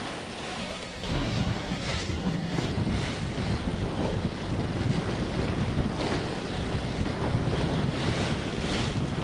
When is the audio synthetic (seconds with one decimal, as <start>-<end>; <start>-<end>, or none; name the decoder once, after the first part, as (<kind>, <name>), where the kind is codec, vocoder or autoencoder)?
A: 0.6-2.7 (codec, SNAC)

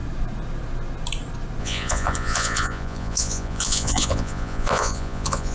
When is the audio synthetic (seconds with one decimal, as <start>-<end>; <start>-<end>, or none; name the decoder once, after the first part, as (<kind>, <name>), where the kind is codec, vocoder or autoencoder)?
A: 1.6-5.5 (vocoder, Vocos)

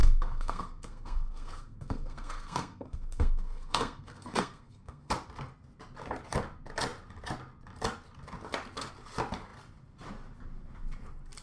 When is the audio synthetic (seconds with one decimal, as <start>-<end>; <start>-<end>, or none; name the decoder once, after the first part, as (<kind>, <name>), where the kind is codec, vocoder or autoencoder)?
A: 0.0-5.1 (codec, SNAC)

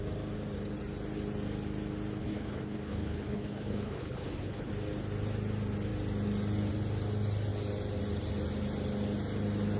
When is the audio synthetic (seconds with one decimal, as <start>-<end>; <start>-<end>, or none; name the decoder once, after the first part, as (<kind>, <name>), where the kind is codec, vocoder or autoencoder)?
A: 2.2-4.7 (codec, HILCodec)